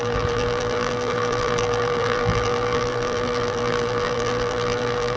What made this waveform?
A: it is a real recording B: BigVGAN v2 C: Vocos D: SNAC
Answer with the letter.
B